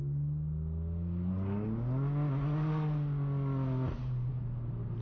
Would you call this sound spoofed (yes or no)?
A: no